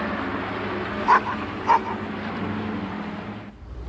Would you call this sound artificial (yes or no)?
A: no